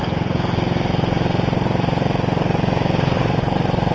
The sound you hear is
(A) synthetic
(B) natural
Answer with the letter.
B